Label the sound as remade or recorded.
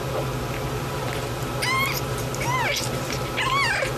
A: recorded